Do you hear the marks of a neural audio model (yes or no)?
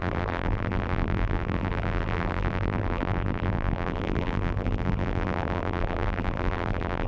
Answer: yes